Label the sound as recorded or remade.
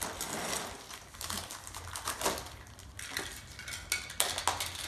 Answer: recorded